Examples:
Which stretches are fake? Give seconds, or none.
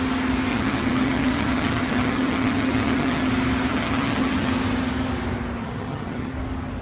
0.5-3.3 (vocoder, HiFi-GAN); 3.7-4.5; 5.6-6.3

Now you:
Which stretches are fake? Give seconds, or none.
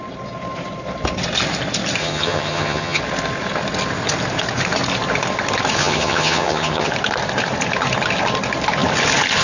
2.0-3.0 (vocoder, HiFi-GAN); 5.8-6.9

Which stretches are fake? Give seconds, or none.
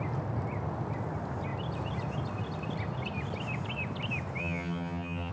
4.4-5.3 (vocoder, HiFi-GAN)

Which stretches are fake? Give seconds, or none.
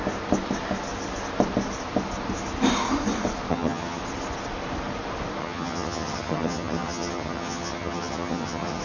3.5-4.0 (vocoder, HiFi-GAN); 5.4-8.8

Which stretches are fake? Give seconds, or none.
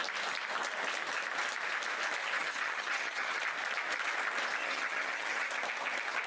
2.2-3.4 (vocoder, HiFi-GAN); 4.6-5.5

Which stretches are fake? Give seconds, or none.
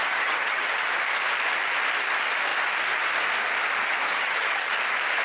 0.0-0.9 (vocoder, HiFi-GAN); 4.1-4.8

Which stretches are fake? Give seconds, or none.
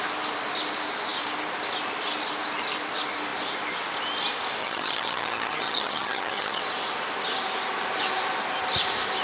4.6-6.6 (vocoder, HiFi-GAN)